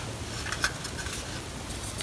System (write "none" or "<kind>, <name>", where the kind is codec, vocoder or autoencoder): none